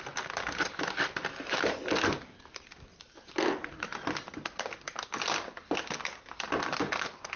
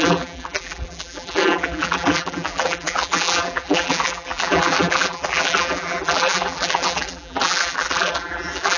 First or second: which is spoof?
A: second